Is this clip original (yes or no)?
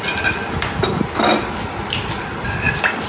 yes